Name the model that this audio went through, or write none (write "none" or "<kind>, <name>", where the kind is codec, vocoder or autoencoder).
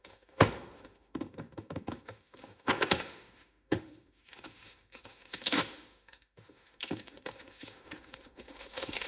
autoencoder, DAC-VAE